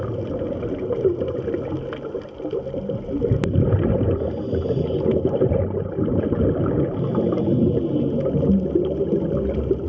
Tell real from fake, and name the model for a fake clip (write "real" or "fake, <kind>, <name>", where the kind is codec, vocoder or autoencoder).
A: real